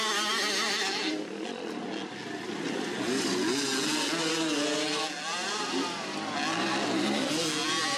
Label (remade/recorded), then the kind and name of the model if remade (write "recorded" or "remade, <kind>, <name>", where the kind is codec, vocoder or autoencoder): recorded